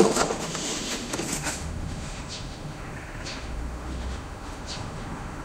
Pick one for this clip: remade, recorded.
remade